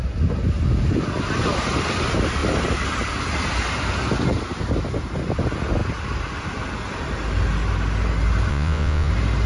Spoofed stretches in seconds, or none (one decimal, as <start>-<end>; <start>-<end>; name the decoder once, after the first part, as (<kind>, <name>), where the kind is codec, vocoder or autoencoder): 8.5-9.1 (vocoder, Vocos)